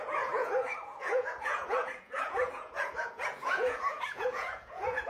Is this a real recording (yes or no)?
no